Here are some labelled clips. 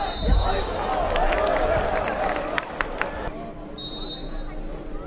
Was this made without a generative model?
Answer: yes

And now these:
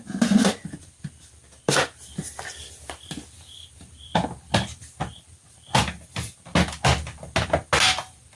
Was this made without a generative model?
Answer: yes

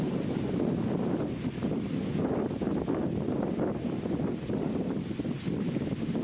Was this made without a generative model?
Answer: yes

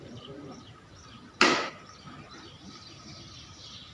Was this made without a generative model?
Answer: yes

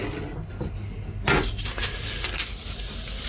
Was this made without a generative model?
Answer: yes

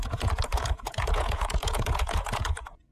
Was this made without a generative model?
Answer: no